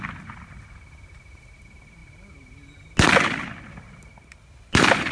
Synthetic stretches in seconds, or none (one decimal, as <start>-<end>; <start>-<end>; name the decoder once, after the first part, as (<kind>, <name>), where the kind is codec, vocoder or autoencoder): none